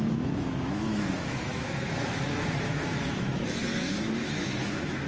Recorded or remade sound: remade